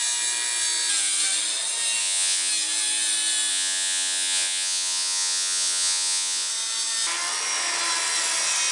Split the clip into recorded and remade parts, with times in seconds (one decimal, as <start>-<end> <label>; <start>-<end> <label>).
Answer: 0.0-2.0 recorded; 2.0-2.5 remade; 2.5-3.5 recorded; 3.5-6.5 remade; 6.5-8.7 recorded